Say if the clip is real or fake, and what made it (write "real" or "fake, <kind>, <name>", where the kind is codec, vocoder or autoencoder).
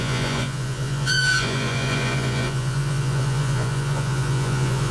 fake, vocoder, Vocos